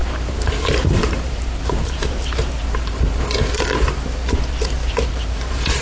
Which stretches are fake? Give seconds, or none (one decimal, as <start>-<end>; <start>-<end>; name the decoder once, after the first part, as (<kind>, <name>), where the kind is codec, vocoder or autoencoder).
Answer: 0.0-3.5 (vocoder, BigVGAN v2); 4.8-5.8